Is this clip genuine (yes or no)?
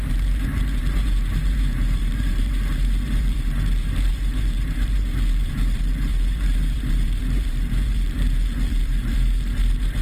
no